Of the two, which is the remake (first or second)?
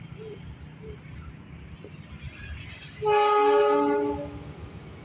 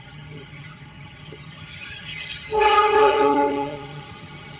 second